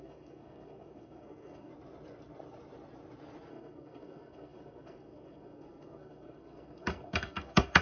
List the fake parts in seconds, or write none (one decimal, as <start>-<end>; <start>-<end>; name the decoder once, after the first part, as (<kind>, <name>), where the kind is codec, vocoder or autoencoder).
0.0-1.7 (codec, SNAC); 3.5-7.8